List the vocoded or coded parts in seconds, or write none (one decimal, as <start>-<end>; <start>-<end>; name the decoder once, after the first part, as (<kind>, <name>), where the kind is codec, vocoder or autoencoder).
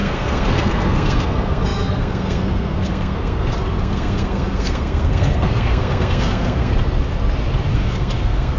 0.0-6.7 (codec, SNAC); 7.7-8.6